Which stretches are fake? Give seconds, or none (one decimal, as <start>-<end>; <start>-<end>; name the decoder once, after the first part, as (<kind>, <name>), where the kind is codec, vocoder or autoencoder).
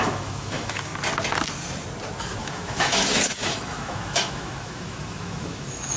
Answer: 0.0-0.9 (autoencoder, DAC-VAE); 2.4-6.0